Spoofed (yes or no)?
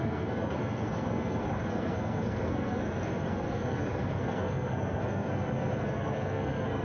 yes